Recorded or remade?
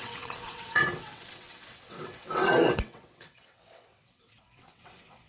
remade